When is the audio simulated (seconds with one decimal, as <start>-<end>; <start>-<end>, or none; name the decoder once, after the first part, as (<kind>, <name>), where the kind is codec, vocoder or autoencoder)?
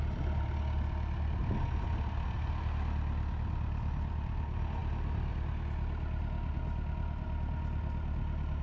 none